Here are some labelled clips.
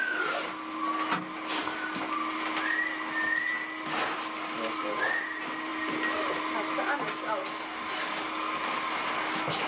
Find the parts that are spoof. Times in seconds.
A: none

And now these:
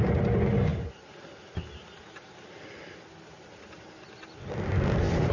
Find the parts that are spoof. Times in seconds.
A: none